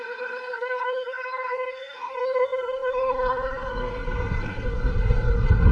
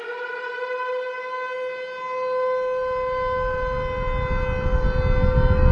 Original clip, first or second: second